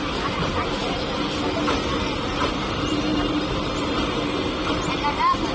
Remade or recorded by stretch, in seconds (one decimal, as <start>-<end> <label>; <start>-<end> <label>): 0.0-5.5 recorded